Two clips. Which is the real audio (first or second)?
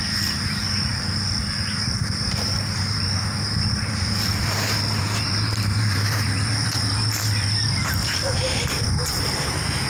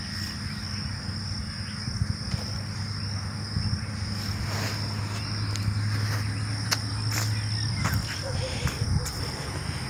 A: second